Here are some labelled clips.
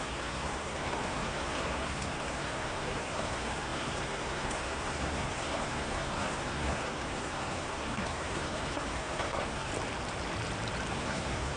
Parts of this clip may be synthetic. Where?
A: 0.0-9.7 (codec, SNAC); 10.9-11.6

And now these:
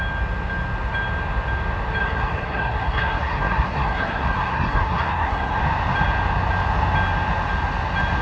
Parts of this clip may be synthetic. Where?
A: 2.0-5.6 (codec, SNAC)

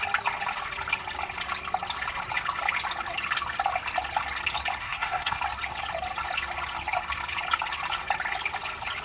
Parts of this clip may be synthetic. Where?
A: 4.8-5.4 (codec, SNAC)

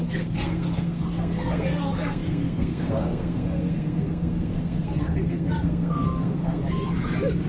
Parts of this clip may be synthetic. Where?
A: 0.0-6.6 (codec, SNAC)

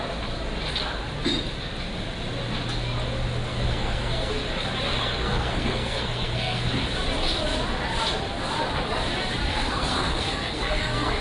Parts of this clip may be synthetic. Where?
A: 3.5-4.3 (codec, SNAC); 4.9-6.7; 9.5-11.2

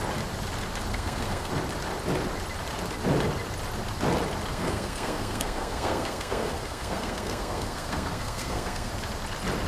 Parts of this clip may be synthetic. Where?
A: 0.9-1.5 (codec, SNAC); 4.5-8.9

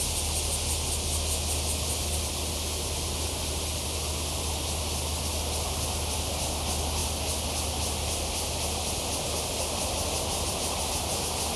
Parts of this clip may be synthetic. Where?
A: none